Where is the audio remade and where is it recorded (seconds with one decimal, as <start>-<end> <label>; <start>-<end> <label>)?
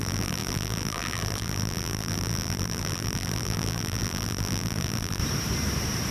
0.0-5.2 remade; 5.2-6.1 recorded